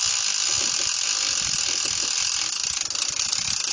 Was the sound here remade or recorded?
recorded